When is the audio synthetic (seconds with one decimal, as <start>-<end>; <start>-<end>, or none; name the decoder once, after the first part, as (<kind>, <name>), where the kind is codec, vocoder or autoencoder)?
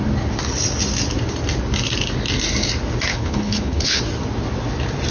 3.1-4.0 (codec, HILCodec)